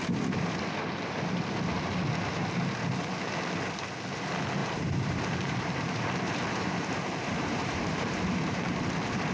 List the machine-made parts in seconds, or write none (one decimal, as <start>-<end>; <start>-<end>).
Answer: 4.6-8.9